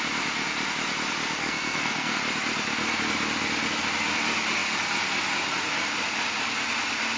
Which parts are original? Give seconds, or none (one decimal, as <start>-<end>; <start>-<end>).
0.0-1.4; 2.2-7.2